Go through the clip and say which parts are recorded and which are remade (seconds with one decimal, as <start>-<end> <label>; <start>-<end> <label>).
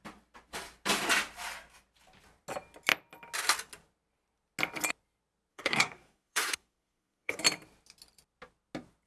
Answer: 0.0-5.5 recorded; 5.5-7.4 remade; 7.4-9.1 recorded